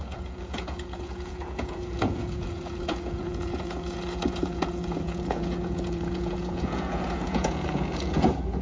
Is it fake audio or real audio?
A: fake